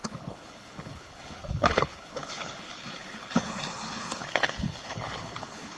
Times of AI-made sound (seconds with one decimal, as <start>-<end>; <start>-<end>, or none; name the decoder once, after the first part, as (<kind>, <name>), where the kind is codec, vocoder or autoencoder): 0.0-5.8 (codec, HILCodec)